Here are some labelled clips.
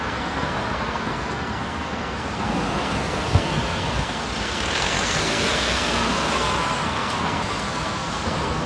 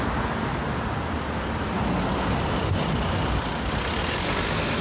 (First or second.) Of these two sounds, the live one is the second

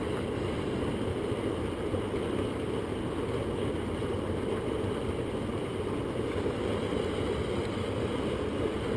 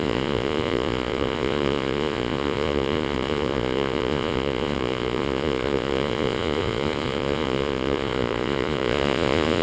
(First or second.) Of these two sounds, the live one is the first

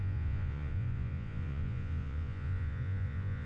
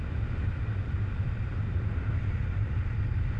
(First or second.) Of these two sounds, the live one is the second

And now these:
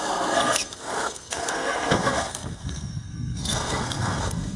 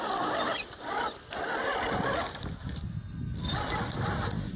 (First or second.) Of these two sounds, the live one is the second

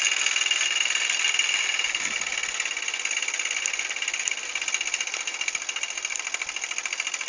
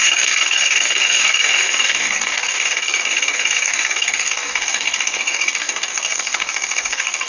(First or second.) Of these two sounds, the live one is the first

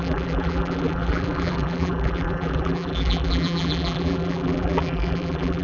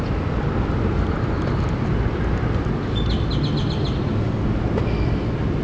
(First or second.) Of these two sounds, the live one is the second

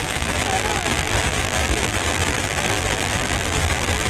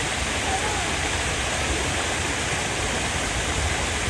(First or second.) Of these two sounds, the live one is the second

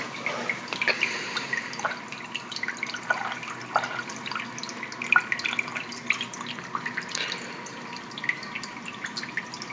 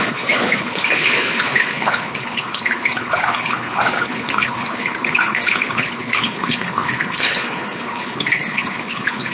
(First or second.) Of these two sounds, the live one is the first